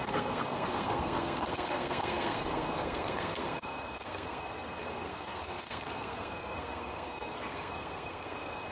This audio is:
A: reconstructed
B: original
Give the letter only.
A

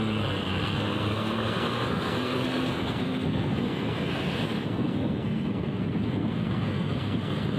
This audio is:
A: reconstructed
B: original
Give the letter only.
A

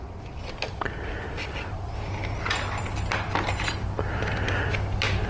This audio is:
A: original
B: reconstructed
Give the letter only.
A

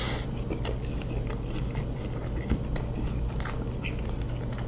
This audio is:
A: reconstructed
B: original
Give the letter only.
B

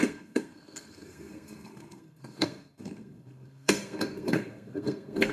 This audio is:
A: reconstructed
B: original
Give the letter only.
A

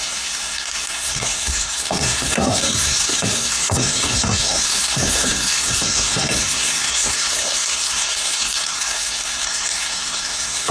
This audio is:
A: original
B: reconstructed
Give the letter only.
B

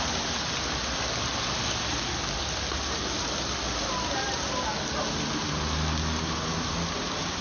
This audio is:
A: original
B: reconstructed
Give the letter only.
A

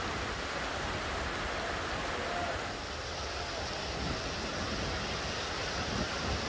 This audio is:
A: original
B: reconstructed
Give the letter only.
A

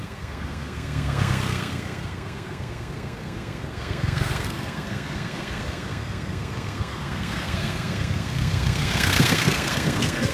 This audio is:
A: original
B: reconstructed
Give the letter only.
B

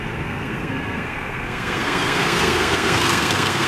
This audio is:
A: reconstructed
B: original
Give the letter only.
A